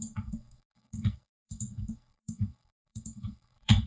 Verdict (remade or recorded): remade